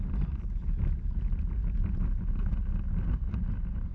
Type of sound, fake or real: real